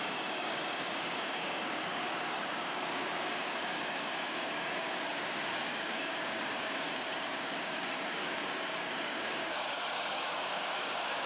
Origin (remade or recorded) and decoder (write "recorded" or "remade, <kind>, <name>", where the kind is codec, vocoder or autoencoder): remade, codec, DAC